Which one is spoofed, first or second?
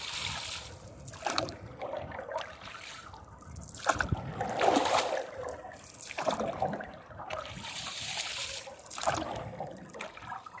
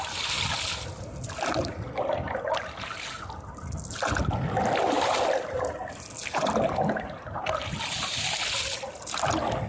first